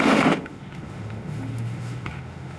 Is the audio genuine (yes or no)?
no